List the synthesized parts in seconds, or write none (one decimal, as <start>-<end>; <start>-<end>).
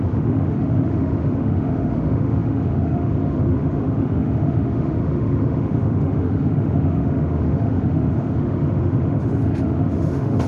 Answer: 0.0-10.5